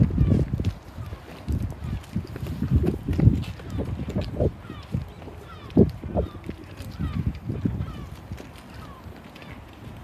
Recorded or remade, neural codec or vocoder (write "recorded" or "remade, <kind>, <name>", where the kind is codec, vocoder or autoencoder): recorded